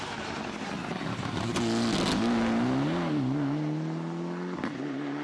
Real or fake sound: real